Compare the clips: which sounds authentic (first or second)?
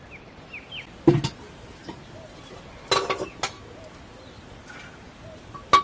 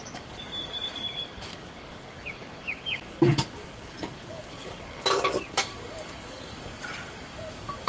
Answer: first